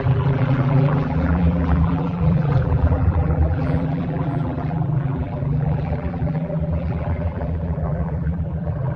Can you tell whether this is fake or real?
fake